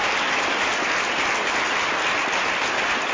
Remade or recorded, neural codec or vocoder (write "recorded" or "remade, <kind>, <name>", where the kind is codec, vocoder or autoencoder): recorded